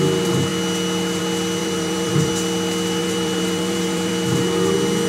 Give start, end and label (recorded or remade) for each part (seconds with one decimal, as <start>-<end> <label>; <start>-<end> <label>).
0.0-1.6 recorded; 1.6-2.3 remade; 2.3-3.0 recorded; 3.0-4.1 remade; 4.1-5.1 recorded